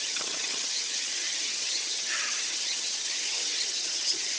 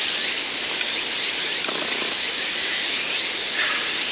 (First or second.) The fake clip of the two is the first